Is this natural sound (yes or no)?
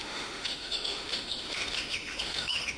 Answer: no